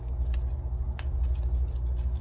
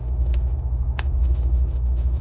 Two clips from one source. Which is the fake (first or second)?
second